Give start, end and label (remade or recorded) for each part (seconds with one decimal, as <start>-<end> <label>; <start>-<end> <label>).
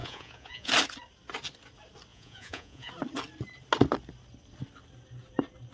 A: 0.0-0.7 remade; 0.7-2.1 recorded; 2.1-2.9 remade; 2.9-5.7 recorded